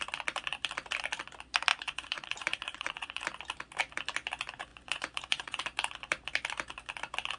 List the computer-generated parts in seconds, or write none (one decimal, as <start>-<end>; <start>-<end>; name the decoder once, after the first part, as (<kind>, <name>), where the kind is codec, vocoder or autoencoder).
1.7-3.2 (vocoder, Vocos); 4.7-5.6